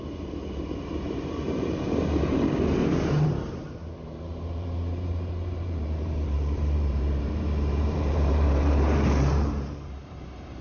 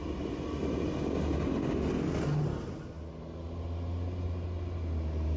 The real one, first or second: second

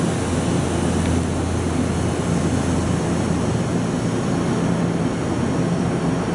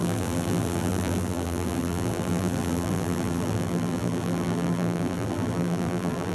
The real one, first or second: first